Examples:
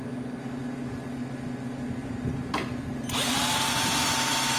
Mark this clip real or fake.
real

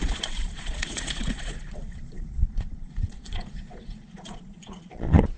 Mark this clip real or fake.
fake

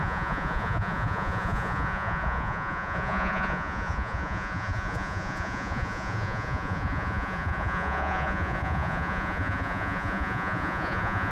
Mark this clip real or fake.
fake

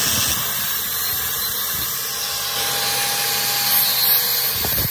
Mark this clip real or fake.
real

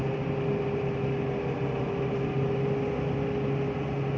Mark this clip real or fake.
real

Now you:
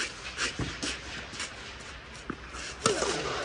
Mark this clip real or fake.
real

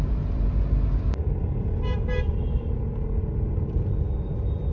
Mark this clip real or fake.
real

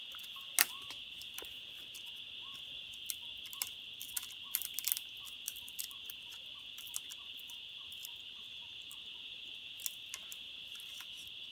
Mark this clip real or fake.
real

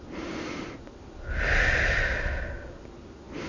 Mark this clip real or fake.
real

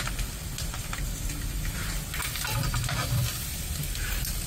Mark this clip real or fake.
fake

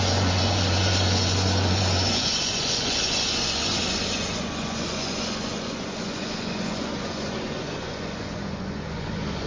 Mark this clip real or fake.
fake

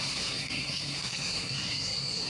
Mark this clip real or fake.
fake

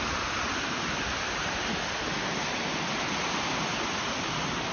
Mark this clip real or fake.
real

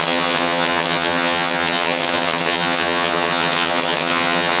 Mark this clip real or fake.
fake